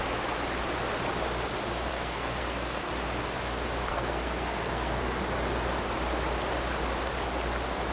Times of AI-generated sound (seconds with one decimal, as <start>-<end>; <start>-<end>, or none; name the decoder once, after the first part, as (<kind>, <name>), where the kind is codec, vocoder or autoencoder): 1.9-2.9 (codec, SNAC); 3.9-5.2

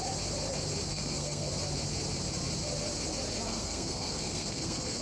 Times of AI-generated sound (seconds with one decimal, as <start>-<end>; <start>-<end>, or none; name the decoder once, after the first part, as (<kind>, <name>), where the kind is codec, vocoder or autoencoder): 0.9-1.5 (codec, SNAC); 3.5-5.0

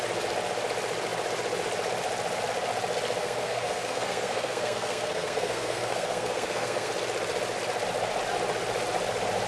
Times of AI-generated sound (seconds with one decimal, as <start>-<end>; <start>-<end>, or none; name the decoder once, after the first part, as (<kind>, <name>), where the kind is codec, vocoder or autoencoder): 3.2-6.9 (codec, SNAC)

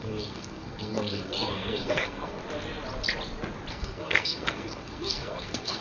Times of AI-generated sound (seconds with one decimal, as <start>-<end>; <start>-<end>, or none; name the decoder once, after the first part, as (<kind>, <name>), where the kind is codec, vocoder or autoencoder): 0.0-2.4 (codec, SNAC); 3.7-5.8

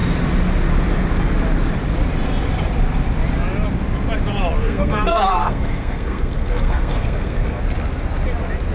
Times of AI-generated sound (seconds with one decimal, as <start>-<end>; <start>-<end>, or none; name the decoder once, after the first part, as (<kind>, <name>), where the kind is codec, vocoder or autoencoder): 4.6-7.6 (codec, SNAC)